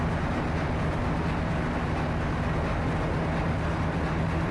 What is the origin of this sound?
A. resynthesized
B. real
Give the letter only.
B